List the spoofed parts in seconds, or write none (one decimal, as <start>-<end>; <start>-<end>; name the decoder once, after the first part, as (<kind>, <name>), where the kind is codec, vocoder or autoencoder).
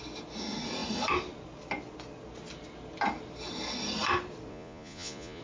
4.5-5.4 (vocoder, Vocos)